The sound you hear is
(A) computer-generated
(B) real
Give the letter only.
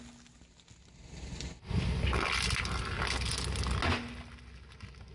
B